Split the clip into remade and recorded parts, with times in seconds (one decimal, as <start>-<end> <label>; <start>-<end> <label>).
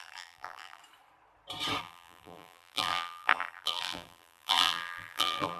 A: 0.0-0.8 remade; 0.8-1.8 recorded; 1.8-5.6 remade